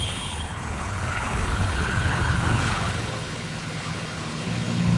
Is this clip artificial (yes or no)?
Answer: yes